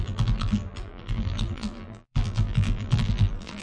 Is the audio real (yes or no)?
no